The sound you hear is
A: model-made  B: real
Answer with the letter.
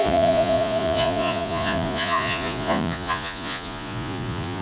A